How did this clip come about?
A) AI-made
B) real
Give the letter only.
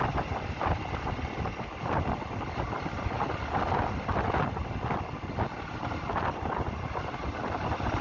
B